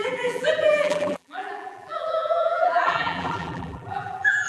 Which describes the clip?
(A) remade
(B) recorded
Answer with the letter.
A